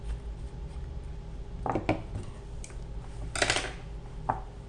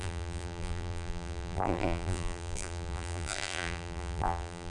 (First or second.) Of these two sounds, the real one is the first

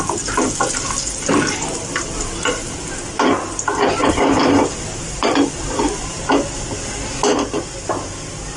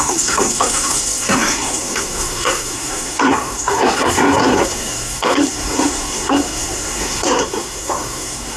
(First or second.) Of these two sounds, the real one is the first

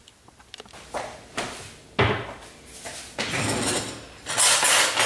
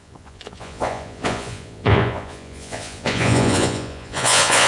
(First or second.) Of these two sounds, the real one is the first